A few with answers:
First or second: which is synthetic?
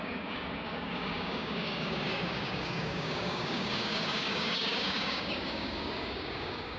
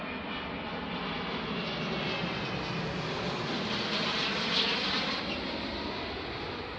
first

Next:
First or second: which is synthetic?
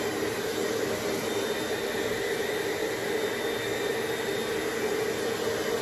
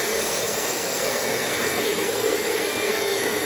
second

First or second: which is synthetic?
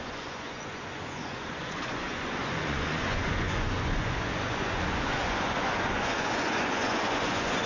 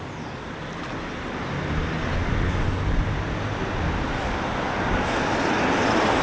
first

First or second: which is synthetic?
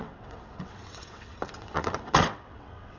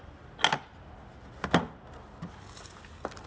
first